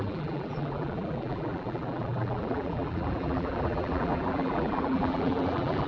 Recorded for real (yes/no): no